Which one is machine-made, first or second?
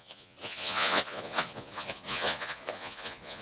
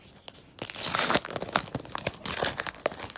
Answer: first